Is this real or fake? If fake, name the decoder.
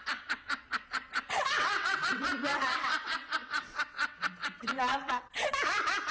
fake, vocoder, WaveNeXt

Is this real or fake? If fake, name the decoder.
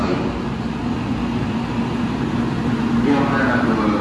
real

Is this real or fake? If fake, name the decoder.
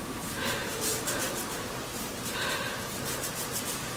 fake, vocoder, BigVGAN v2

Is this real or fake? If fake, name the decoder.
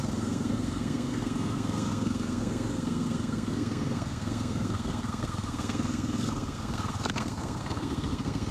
fake, codec, SNAC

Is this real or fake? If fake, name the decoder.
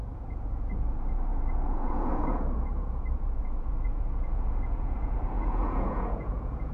fake, vocoder, Vocos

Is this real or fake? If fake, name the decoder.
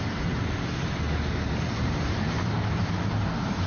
fake, vocoder, BigVGAN v2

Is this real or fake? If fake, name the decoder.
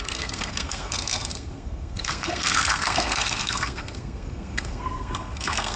fake, codec, SNAC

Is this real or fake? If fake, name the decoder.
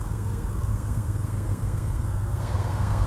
fake, codec, SNAC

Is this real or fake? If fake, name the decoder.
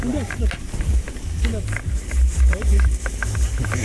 real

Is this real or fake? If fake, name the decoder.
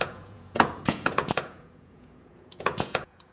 fake, vocoder, Vocos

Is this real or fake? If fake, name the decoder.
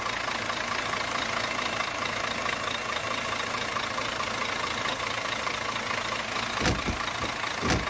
real